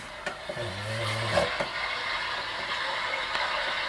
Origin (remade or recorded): recorded